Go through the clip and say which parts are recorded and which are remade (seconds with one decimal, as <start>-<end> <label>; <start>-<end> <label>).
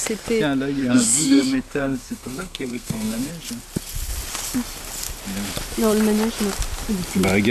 0.0-0.8 recorded; 0.8-3.3 remade; 3.3-7.5 recorded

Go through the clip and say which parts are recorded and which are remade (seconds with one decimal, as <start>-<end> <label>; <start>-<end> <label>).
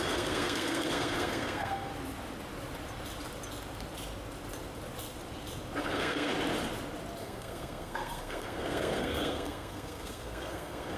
0.0-1.9 remade; 1.9-5.8 recorded; 5.8-6.3 remade; 6.3-7.2 recorded; 7.2-11.0 remade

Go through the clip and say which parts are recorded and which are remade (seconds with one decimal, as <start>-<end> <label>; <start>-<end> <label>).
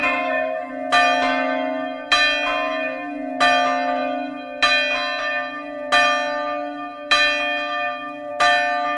0.0-0.7 remade; 0.7-9.0 recorded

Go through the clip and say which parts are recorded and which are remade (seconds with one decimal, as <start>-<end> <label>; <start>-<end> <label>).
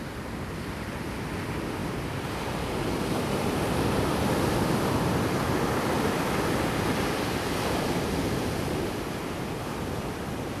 0.0-10.6 recorded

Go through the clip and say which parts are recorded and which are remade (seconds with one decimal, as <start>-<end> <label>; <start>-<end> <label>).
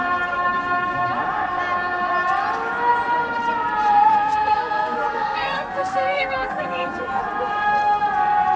0.0-4.1 recorded; 4.1-7.2 remade; 7.2-8.6 recorded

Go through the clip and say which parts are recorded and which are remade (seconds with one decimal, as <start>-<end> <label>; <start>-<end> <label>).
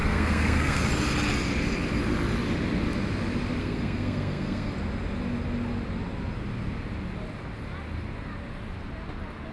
0.0-0.8 remade; 0.8-3.6 recorded; 3.6-4.7 remade; 4.7-9.5 recorded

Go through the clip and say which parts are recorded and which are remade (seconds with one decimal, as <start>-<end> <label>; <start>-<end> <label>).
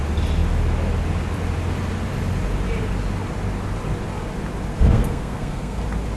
0.0-4.7 recorded; 4.7-5.8 remade; 5.8-6.2 recorded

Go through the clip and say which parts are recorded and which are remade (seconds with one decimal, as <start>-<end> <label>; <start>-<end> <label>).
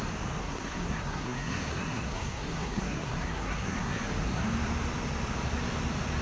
0.0-0.4 recorded; 0.4-4.1 remade; 4.1-6.2 recorded